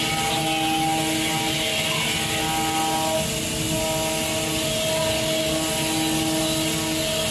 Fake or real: real